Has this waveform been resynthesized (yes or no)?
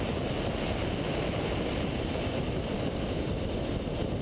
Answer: no